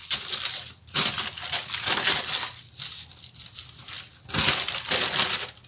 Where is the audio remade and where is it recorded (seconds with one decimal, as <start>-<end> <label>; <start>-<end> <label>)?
0.0-5.7 recorded